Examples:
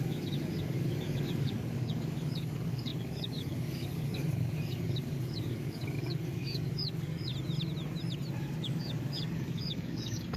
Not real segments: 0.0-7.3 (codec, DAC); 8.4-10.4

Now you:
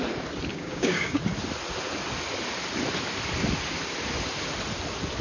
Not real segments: 0.5-1.2 (codec, DAC)

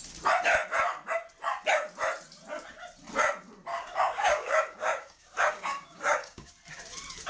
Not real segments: 3.7-6.5 (codec, DAC)

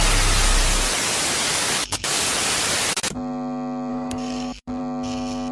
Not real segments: 1.5-2.3 (codec, DAC); 3.9-4.8

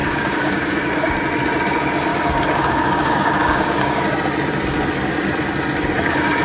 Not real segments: 0.0-1.2 (codec, DAC); 2.1-4.0

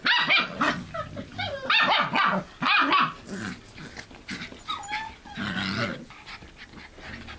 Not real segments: none